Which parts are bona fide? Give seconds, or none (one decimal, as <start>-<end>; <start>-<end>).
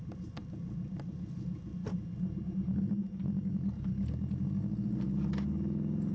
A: 0.0-6.1